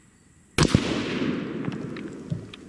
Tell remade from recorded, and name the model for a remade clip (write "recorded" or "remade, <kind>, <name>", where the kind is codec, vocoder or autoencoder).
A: recorded